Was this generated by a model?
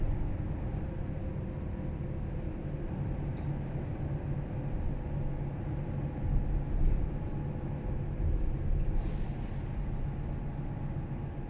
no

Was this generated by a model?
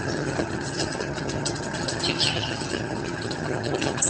yes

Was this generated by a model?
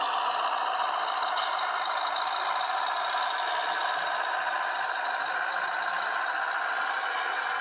no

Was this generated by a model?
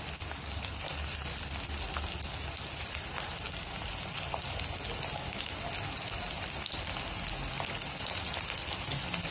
no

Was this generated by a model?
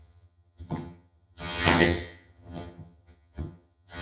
yes